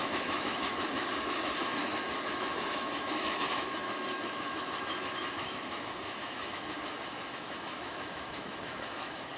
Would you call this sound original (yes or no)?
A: no